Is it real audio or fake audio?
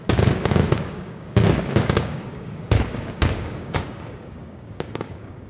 fake